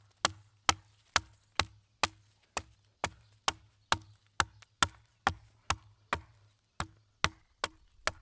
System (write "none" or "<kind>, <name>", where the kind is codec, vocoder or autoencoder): none